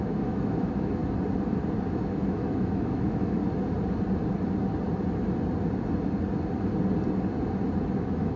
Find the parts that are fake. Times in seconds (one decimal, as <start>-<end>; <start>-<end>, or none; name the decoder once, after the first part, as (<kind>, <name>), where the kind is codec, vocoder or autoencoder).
0.0-1.0 (autoencoder, DAC-VAE); 1.9-3.4; 7.8-8.4

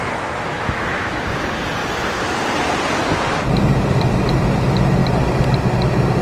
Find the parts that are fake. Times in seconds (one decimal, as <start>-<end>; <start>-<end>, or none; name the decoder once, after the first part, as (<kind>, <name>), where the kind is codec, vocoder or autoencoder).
0.5-1.2 (autoencoder, DAC-VAE)

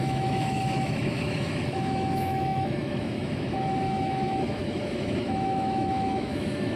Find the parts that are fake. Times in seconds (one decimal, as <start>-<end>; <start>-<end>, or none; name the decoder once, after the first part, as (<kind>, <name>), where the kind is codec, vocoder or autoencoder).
0.0-6.8 (autoencoder, DAC-VAE)

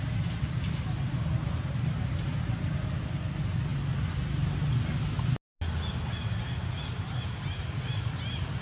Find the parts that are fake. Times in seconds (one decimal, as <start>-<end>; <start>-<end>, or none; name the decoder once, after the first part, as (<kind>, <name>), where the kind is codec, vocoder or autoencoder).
none

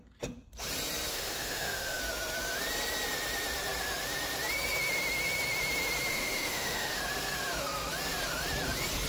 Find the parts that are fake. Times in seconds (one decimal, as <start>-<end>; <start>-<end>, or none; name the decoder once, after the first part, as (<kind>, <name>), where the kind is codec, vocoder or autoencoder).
1.1-2.0 (autoencoder, DAC-VAE); 6.1-7.0